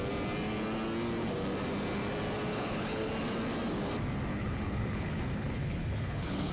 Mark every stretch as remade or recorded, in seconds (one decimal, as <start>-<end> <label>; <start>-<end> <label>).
0.0-2.5 recorded; 2.5-3.1 remade; 3.1-4.3 recorded; 4.3-6.5 remade